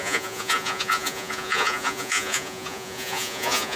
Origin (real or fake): fake